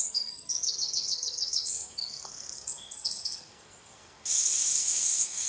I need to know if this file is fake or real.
fake